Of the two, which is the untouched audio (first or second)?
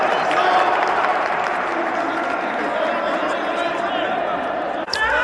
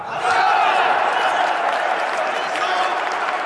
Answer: second